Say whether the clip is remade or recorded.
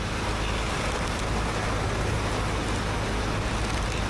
recorded